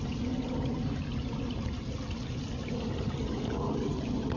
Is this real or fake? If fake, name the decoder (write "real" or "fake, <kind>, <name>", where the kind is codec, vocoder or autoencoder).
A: real